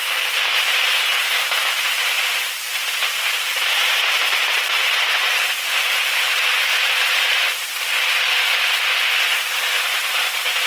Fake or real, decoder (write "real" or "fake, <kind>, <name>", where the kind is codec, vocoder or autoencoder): fake, vocoder, BigVGAN v2